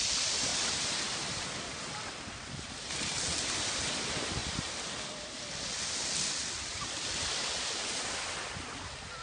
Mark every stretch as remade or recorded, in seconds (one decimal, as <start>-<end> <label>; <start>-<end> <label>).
0.0-9.2 recorded